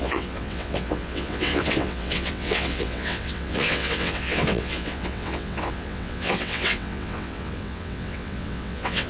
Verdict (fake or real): fake